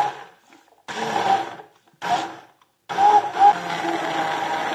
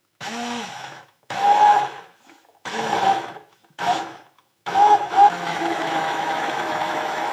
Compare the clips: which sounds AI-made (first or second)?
second